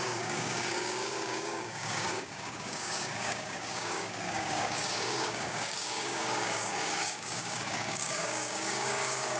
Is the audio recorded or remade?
remade